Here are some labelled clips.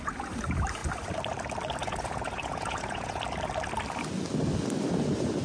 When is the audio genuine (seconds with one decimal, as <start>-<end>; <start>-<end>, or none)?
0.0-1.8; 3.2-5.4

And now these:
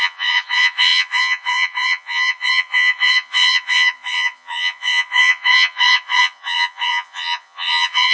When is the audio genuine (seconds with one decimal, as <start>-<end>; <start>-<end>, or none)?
none

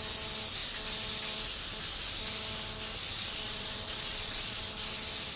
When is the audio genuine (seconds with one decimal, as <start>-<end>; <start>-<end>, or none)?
0.0-3.1; 4.6-5.4

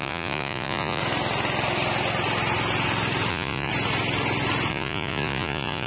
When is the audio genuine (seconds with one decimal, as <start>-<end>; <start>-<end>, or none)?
1.0-3.3; 3.7-4.7

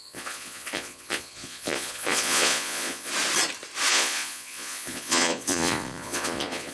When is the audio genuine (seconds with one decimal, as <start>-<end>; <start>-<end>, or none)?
3.1-3.9

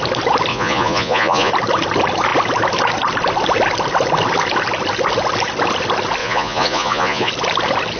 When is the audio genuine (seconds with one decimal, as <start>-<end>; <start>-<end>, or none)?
0.0-0.5; 1.5-6.2; 7.3-8.0